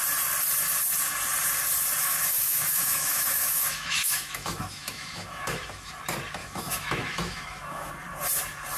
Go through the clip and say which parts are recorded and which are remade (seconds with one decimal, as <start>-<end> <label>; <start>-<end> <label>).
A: 0.0-2.0 recorded; 2.0-5.9 remade; 5.9-6.4 recorded; 6.4-7.9 remade; 7.9-8.8 recorded